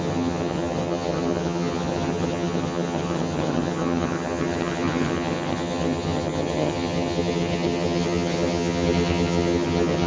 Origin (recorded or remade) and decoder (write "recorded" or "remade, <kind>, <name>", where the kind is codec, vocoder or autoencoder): remade, vocoder, HiFi-GAN